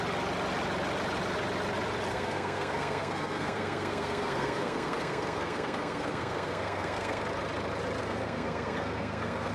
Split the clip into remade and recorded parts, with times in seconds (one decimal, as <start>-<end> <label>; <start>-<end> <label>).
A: 0.0-2.1 recorded; 2.1-7.2 remade; 7.2-8.0 recorded; 8.0-9.5 remade